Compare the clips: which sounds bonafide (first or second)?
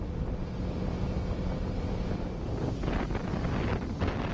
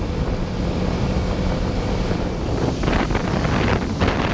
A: first